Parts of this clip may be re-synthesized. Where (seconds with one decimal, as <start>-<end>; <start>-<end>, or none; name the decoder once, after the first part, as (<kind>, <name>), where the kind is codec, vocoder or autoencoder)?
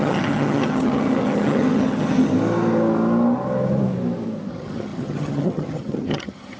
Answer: 0.0-2.3 (vocoder, HiFi-GAN); 4.5-6.6